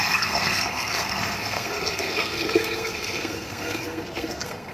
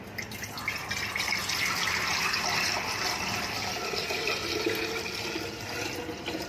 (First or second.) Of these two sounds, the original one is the second